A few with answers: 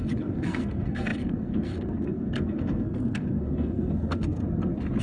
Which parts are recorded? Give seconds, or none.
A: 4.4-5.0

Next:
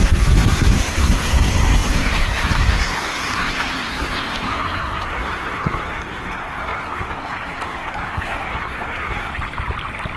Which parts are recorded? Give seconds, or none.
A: 9.3-10.2